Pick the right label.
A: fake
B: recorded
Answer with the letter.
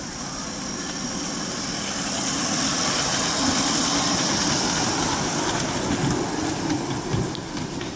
B